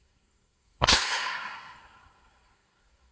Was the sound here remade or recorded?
remade